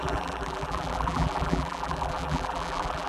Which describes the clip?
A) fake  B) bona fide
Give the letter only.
A